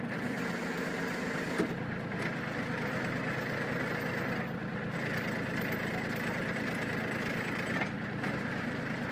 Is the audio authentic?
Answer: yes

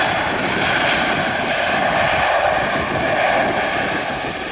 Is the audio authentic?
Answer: yes